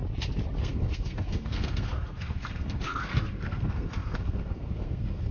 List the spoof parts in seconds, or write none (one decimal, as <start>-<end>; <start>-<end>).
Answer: 0.6-5.3